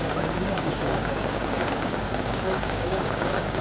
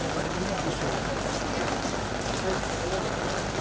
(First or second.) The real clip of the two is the second